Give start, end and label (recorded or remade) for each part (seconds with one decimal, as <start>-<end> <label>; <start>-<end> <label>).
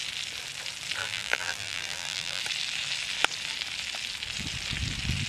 0.0-1.0 recorded; 1.0-2.4 remade; 2.4-5.3 recorded